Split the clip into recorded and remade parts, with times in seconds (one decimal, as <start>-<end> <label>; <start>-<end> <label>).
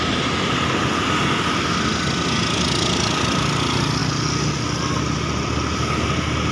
0.0-6.5 recorded